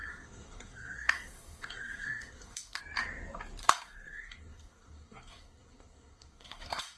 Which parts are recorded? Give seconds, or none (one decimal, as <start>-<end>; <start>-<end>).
2.8-3.6